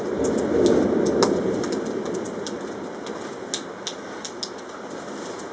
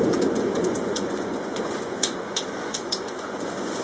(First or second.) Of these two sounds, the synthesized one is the second